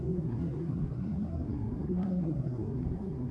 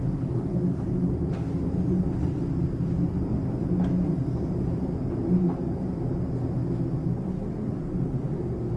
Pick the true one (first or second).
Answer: second